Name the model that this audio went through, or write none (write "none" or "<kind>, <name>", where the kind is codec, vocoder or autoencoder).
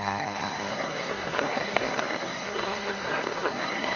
codec, SNAC